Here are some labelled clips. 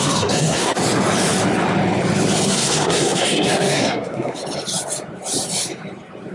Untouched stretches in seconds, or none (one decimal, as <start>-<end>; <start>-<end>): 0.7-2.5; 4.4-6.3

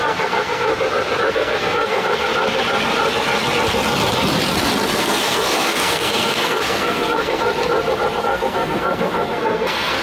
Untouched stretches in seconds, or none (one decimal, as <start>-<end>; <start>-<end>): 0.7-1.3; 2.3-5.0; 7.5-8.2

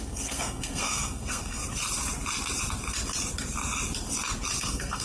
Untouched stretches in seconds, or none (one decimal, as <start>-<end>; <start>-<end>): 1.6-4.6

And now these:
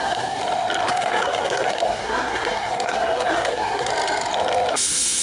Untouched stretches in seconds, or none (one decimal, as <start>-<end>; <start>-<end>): 0.4-0.9; 3.9-4.7

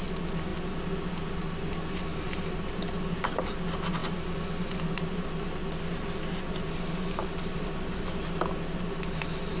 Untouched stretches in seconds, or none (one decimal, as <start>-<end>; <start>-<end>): 0.0-9.6

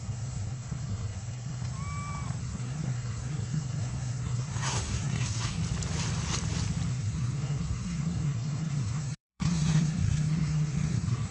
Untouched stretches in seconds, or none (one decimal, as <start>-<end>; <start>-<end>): 1.7-2.4; 5.6-6.9